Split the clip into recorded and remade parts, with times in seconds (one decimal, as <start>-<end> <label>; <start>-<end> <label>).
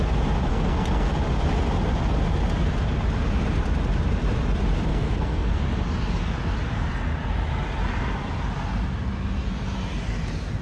0.0-0.5 recorded; 0.5-1.1 remade; 1.1-4.9 recorded; 4.9-5.6 remade; 5.6-10.6 recorded